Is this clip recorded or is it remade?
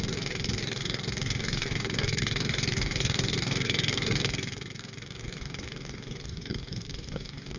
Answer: remade